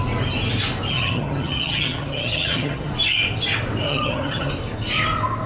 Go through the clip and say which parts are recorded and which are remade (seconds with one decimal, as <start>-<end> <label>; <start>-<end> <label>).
0.0-0.9 recorded; 0.9-2.9 remade; 2.9-3.9 recorded; 3.9-4.5 remade; 4.5-5.5 recorded